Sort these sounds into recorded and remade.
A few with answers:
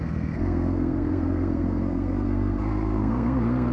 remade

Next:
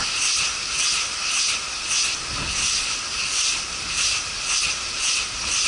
recorded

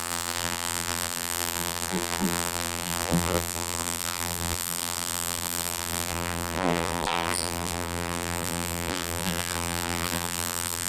remade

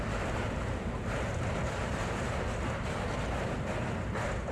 recorded